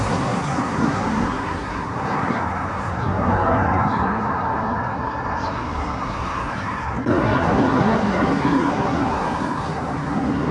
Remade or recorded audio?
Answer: remade